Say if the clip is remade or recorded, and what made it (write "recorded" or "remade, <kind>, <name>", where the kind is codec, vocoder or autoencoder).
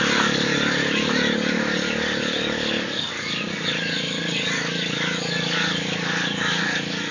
remade, codec, DAC